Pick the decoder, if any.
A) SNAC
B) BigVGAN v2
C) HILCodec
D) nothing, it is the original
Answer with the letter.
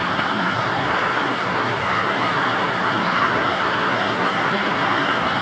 A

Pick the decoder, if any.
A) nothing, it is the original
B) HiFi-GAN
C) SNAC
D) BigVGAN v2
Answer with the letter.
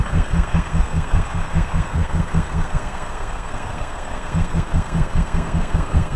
C